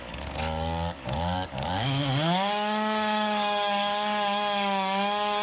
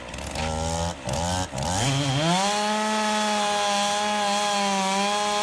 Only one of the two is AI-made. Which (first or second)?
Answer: first